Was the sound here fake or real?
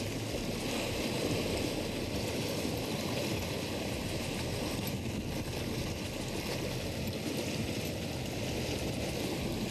real